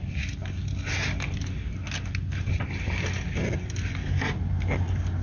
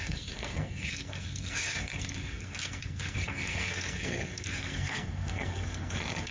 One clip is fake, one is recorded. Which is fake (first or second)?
second